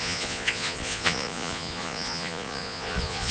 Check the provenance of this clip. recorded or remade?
remade